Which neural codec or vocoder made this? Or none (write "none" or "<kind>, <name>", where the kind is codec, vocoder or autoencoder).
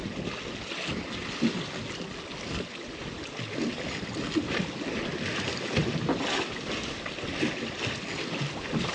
none